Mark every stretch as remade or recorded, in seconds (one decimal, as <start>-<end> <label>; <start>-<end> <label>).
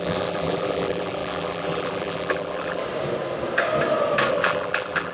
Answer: 0.0-2.8 remade; 2.8-4.3 recorded; 4.3-5.1 remade